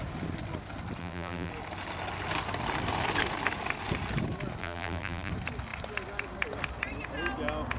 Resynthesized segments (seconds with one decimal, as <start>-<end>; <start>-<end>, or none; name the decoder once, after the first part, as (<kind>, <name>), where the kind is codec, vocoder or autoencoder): 1.0-1.5 (vocoder, BigVGAN v2); 4.6-5.3